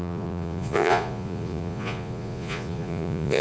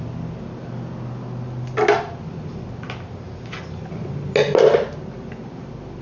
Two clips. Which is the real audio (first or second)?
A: second